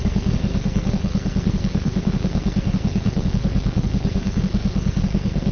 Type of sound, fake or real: fake